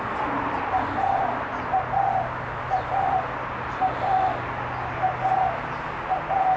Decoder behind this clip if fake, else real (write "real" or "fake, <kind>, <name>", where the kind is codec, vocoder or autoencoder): real